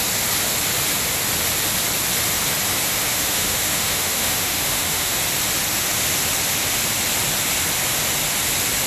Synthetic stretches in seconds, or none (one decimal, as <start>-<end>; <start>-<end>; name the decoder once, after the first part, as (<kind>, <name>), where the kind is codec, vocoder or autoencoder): 3.1-5.2 (autoencoder, DAC-VAE)